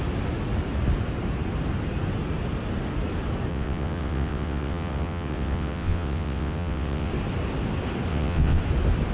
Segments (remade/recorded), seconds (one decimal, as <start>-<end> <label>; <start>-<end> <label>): 0.0-3.5 recorded; 3.5-7.1 remade; 7.1-8.1 recorded; 8.1-8.6 remade; 8.6-9.1 recorded